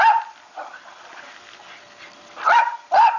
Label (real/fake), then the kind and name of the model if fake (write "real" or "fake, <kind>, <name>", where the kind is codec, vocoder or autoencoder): real